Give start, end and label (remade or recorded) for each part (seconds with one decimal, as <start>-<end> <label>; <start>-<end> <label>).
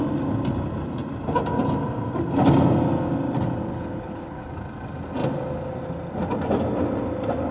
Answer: 0.0-3.7 recorded; 3.7-4.5 remade; 4.5-7.5 recorded